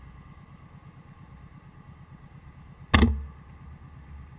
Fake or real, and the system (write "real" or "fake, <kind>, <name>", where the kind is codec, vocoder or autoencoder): real